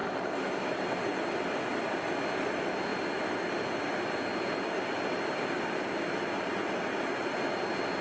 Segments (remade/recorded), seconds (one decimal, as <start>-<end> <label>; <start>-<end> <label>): 0.0-8.0 recorded